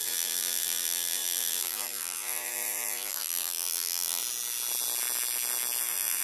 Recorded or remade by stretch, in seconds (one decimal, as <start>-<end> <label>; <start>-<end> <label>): 0.0-4.2 remade; 4.2-5.8 recorded; 5.8-6.2 remade